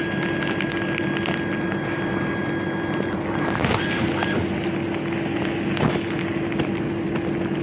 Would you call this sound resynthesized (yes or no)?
no